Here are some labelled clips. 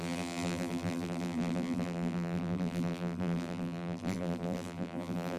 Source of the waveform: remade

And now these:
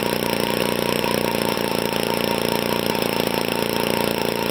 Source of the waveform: remade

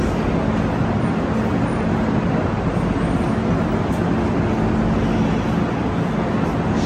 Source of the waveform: recorded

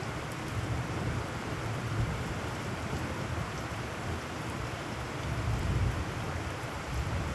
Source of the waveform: remade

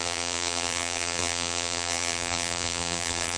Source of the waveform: remade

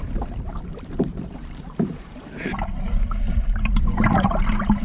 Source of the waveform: remade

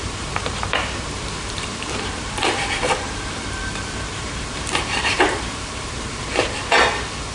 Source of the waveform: remade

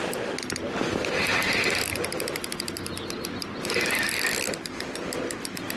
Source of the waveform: recorded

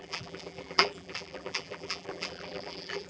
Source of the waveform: remade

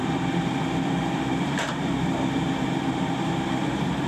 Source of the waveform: remade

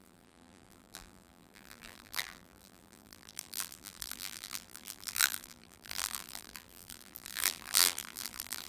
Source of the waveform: remade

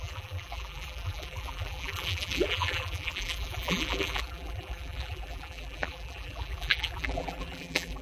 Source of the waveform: remade